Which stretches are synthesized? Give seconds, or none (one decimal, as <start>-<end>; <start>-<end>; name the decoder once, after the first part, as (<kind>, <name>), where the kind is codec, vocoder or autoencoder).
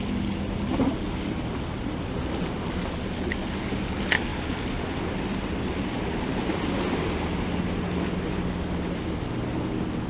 none